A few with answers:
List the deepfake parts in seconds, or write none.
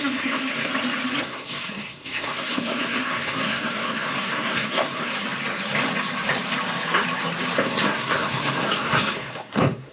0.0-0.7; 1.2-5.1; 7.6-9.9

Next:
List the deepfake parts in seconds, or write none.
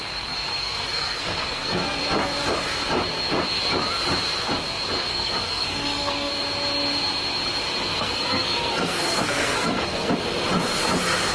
0.5-2.0; 5.0-6.3; 7.9-10.1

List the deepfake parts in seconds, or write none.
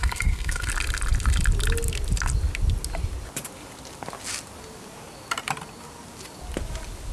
0.0-0.7